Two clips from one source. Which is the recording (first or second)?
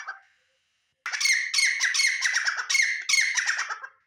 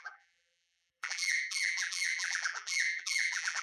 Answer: first